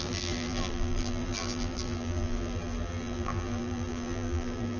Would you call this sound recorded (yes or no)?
no